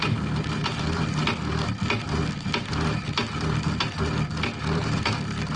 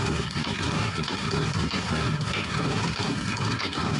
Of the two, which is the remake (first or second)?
second